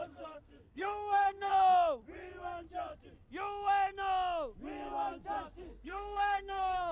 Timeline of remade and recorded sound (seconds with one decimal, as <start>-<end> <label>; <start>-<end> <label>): 0.0-1.5 remade; 1.5-5.6 recorded; 5.6-6.9 remade